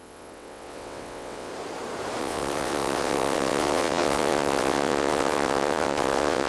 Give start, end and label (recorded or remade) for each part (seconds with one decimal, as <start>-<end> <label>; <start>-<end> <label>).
0.0-1.5 remade; 1.5-2.2 recorded; 2.2-6.5 remade